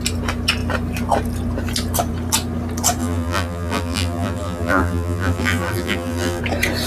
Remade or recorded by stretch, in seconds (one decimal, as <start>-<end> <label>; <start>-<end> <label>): 0.0-3.0 recorded; 3.0-6.4 remade; 6.4-6.9 recorded